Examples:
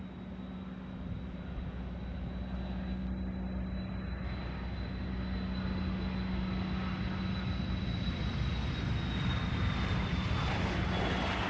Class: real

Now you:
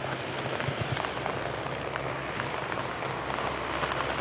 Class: real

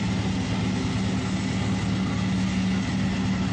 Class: real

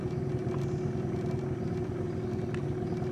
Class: real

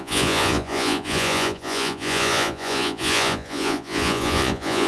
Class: fake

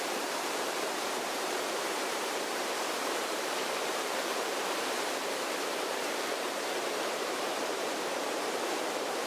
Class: fake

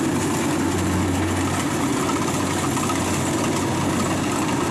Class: real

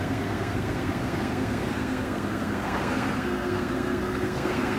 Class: fake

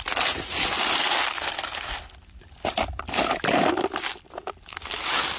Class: real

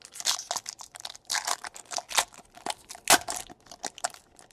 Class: real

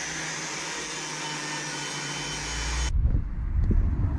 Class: real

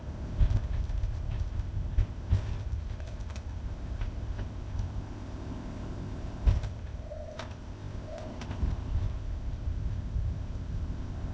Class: fake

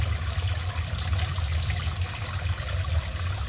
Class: real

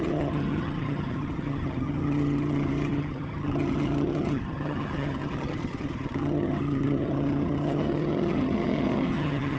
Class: fake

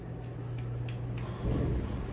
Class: real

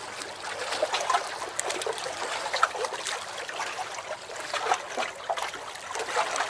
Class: real